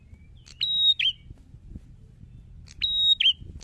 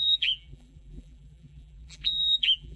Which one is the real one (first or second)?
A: first